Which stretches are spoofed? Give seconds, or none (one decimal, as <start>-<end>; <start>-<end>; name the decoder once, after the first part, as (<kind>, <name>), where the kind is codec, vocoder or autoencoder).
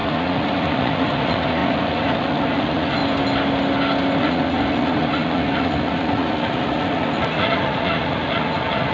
0.0-3.0 (vocoder, Vocos); 4.2-8.9